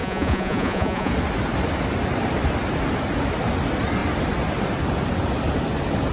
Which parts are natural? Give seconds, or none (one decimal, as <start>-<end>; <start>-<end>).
1.1-6.1